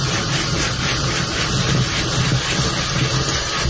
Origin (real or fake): real